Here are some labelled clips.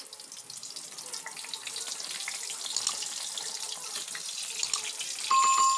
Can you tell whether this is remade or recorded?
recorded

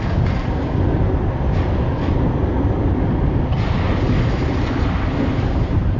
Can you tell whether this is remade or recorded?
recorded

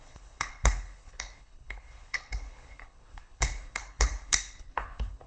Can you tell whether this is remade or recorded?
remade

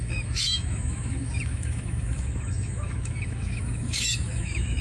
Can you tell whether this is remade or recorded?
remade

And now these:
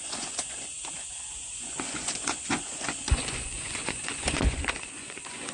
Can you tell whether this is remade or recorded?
remade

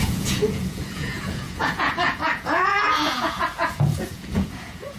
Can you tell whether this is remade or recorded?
remade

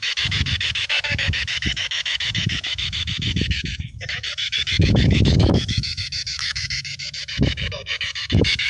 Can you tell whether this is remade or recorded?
remade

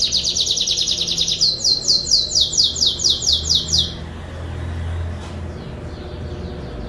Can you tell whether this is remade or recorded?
recorded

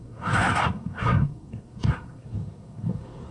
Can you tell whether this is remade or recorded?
remade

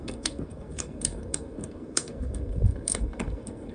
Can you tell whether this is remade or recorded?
remade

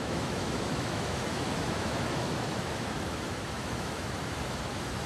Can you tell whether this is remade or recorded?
remade